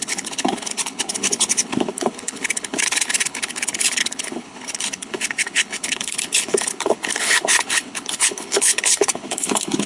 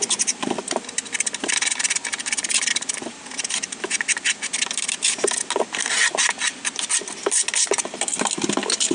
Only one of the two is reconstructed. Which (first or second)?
first